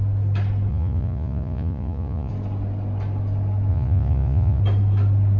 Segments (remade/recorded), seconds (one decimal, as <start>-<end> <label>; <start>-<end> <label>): 0.0-0.7 recorded; 0.7-2.3 remade; 2.3-3.7 recorded; 3.7-4.6 remade; 4.6-5.4 recorded